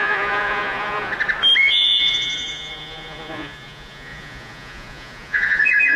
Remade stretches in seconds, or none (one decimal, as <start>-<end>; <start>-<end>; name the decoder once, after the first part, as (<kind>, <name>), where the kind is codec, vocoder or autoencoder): 0.0-1.1 (vocoder, Vocos); 1.6-6.0